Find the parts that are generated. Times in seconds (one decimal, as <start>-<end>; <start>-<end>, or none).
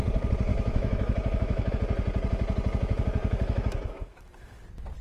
0.5-1.7; 3.2-4.6